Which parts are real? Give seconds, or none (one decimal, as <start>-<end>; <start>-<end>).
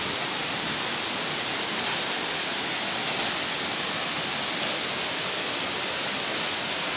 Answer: 0.0-6.3